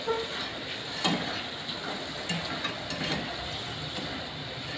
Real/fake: real